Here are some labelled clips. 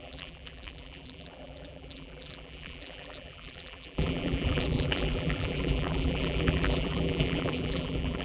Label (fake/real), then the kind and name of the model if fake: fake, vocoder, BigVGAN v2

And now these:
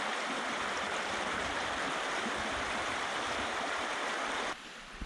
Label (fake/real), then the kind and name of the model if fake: fake, vocoder, BigVGAN v2